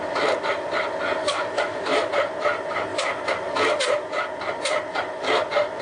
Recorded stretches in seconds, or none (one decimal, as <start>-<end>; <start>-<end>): 0.0-1.2; 2.1-5.8